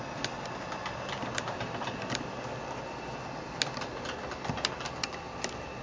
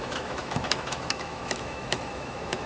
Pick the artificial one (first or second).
second